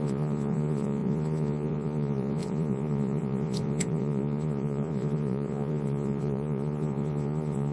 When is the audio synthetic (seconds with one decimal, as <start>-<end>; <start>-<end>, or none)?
0.0-7.7